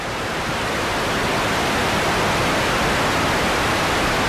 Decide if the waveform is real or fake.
fake